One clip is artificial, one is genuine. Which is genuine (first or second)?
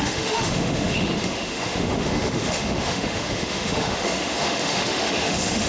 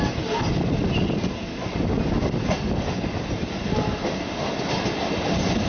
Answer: second